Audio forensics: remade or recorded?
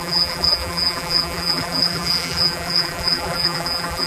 remade